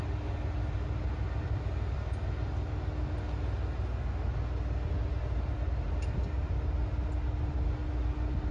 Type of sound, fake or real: real